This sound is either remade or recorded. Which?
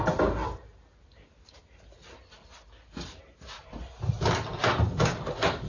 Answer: recorded